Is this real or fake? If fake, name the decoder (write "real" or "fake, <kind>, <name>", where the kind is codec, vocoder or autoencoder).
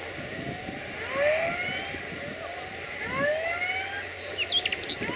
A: real